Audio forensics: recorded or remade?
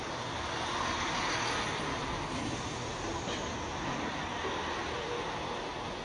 recorded